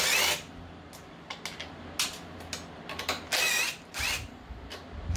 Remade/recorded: recorded